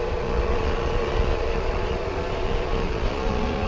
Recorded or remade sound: remade